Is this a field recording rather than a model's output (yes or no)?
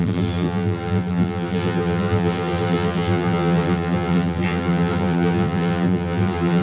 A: no